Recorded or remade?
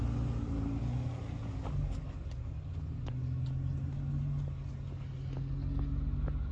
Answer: recorded